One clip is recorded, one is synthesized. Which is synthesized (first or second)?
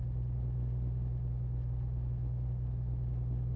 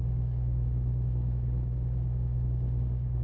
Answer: second